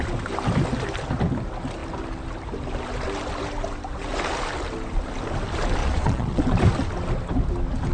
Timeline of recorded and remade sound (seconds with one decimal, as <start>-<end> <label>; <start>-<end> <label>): 0.0-5.8 recorded; 5.8-6.4 remade; 6.4-7.9 recorded